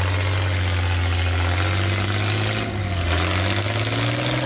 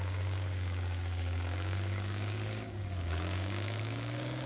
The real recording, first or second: first